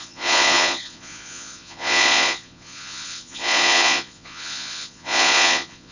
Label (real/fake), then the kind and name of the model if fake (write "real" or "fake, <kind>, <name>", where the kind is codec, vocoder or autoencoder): fake, vocoder, Vocos